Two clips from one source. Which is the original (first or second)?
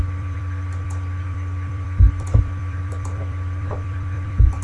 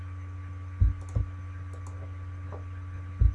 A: second